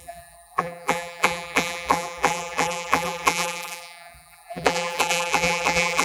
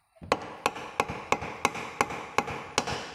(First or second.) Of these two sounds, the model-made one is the first